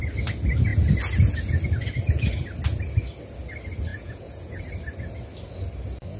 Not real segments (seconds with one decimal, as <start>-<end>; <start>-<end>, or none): 3.9-4.6